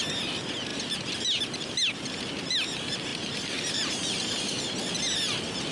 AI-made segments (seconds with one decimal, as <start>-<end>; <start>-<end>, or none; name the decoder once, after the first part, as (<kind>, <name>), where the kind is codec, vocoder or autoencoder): 3.1-4.8 (vocoder, BigVGAN v2)